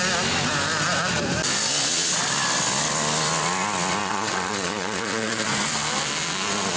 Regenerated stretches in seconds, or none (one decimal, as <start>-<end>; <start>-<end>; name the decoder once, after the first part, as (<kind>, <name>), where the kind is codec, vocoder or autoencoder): 4.0-5.5 (vocoder, Vocos)